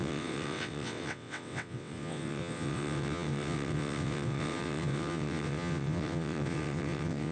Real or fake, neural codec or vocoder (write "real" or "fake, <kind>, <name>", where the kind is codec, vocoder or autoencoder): fake, vocoder, WaveNeXt